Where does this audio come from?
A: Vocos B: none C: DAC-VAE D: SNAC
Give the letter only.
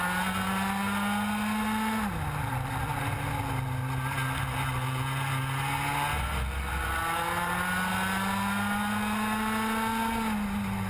B